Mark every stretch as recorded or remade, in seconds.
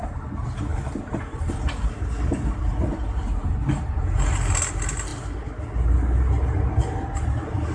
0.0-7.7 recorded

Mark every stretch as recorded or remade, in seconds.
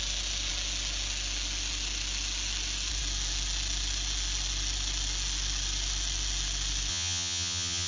0.0-6.9 recorded; 6.9-7.9 remade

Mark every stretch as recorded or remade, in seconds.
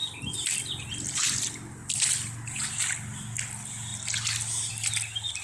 0.0-5.4 recorded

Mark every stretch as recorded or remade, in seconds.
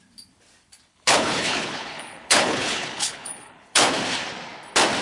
0.0-0.9 recorded; 0.9-3.9 remade; 3.9-5.0 recorded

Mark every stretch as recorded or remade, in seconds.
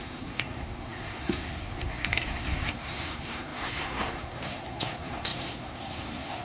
0.0-6.4 remade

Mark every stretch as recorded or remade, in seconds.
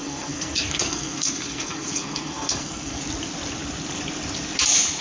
0.0-3.0 remade; 3.0-5.0 recorded